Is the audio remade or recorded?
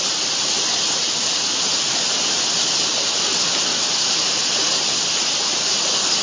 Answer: recorded